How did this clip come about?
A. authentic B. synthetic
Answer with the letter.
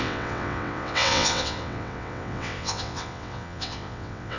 B